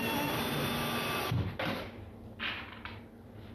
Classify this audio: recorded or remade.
recorded